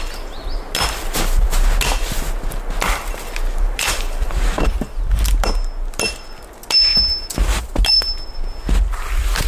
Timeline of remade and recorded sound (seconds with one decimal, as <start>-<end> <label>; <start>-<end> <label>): 0.0-9.5 recorded